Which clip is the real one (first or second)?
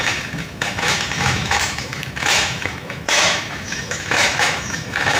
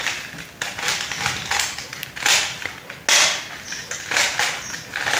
second